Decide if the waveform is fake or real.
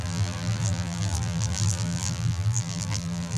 fake